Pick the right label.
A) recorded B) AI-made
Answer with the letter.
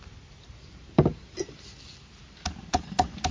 A